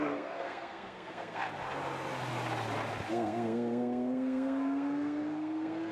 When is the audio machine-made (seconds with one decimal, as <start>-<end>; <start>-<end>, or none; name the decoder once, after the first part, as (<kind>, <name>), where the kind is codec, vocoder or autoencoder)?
0.0-1.4 (codec, SNAC); 3.1-5.9